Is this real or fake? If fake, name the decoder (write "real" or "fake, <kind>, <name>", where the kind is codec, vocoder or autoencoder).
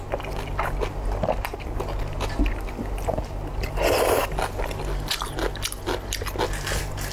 real